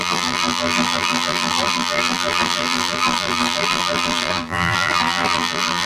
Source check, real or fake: fake